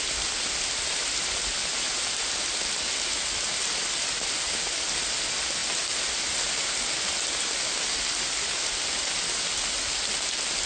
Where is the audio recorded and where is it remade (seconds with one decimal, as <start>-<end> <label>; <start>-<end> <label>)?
0.0-1.9 recorded; 1.9-2.5 remade; 2.5-10.7 recorded